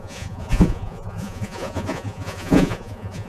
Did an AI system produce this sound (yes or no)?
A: yes